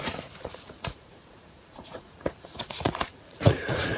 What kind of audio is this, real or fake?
fake